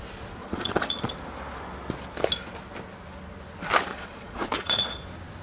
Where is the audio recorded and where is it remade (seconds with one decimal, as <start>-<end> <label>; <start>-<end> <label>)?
0.0-0.4 recorded; 0.4-1.1 remade; 1.1-3.9 recorded; 3.9-5.0 remade; 5.0-5.4 recorded